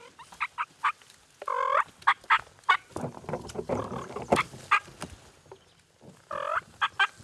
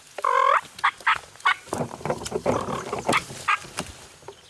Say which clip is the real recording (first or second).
first